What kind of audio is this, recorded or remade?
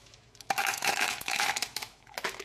remade